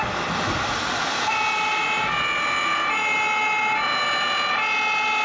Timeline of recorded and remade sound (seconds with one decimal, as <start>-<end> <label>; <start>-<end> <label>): 0.0-5.2 recorded